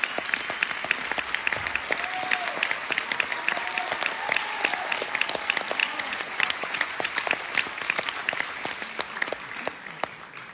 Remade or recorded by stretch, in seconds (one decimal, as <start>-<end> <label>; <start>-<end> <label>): 0.0-5.8 recorded; 5.8-7.1 remade; 7.1-10.5 recorded